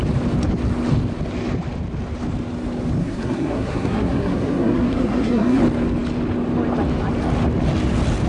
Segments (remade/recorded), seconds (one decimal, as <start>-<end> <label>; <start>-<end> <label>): 0.0-3.0 recorded; 3.0-5.6 remade; 5.6-8.3 recorded